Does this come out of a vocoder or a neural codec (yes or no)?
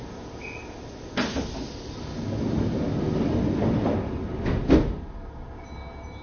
no